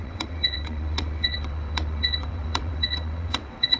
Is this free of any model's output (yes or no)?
no